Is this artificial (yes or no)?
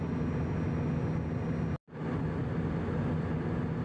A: no